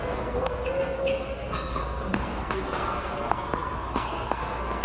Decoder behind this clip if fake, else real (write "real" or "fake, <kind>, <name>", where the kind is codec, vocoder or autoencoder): fake, codec, SNAC